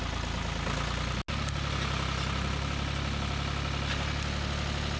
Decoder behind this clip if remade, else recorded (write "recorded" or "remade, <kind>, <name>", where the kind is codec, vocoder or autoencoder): recorded